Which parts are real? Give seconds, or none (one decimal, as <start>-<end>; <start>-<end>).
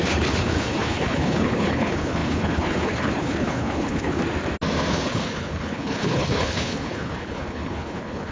4.2-4.9